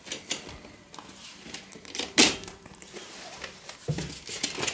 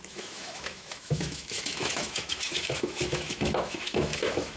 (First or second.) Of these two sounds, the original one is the first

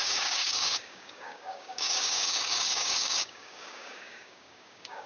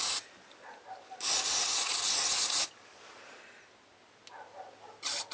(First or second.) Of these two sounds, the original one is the second